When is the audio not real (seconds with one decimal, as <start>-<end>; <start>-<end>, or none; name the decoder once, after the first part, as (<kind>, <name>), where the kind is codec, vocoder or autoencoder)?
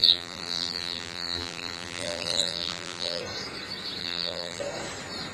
0.0-3.2 (vocoder, BigVGAN v2); 4.0-4.6